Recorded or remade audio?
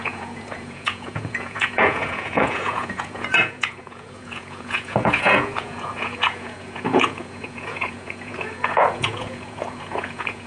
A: remade